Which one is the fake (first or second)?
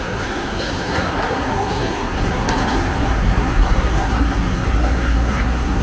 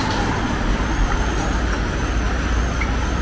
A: first